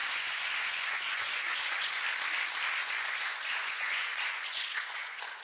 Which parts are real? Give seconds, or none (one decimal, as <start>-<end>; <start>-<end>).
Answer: 2.0-2.8